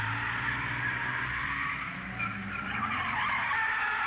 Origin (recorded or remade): recorded